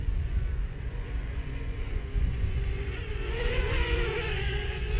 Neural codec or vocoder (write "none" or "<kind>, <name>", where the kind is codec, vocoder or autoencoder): vocoder, Vocos